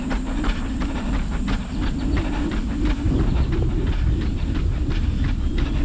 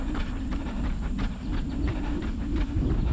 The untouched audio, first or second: first